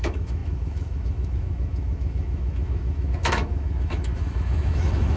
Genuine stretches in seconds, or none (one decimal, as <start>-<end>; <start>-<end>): none